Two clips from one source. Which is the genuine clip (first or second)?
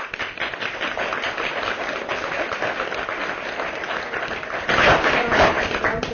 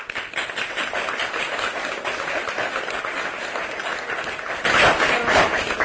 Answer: second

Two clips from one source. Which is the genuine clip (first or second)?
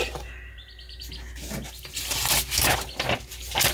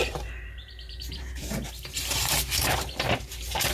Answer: first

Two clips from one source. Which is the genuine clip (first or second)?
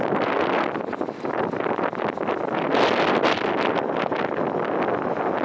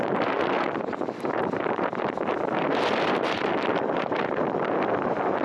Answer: first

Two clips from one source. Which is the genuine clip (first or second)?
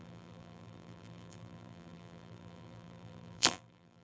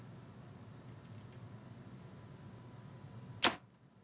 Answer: second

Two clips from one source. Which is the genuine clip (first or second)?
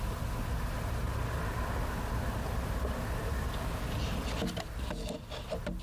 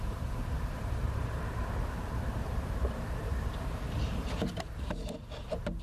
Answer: first